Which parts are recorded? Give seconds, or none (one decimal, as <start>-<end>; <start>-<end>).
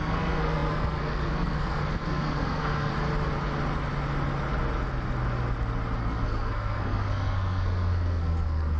2.9-6.0